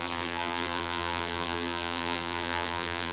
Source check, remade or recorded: remade